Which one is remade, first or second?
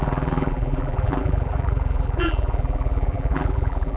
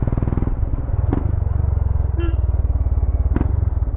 first